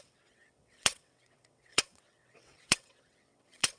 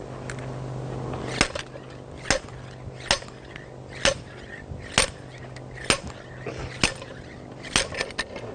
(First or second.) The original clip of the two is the second